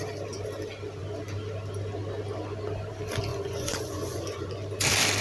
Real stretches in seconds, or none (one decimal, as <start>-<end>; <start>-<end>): 0.0-3.3; 4.5-5.2